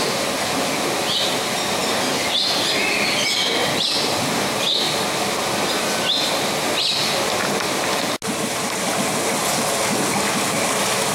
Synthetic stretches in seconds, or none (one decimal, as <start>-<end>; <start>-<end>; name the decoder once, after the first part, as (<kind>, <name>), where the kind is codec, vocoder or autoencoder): none